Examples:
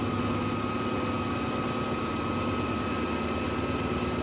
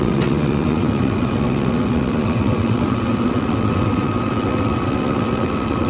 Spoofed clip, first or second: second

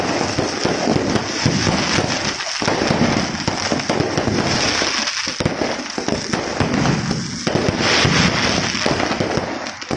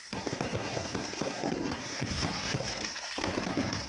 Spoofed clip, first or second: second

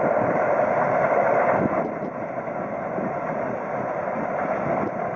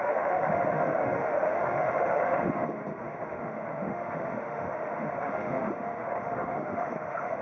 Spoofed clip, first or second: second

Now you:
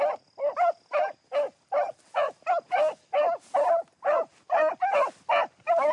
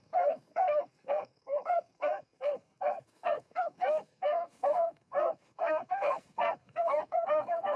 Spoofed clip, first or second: second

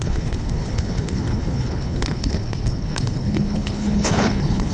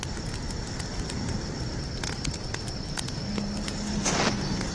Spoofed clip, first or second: first